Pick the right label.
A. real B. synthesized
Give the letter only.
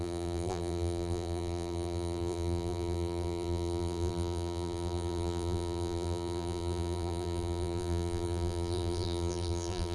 B